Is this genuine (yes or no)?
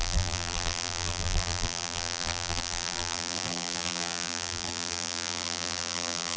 no